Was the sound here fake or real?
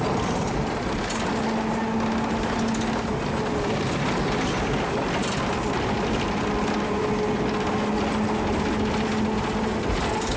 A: real